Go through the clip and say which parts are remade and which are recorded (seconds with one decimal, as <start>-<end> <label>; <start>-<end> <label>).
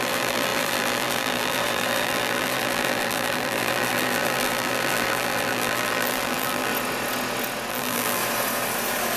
0.0-6.7 remade; 6.7-7.7 recorded; 7.7-8.2 remade; 8.2-9.2 recorded